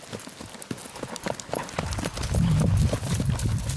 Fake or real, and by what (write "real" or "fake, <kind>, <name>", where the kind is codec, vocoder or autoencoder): real